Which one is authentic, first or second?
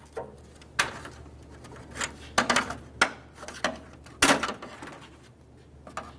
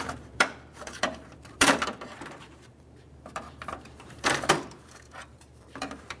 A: first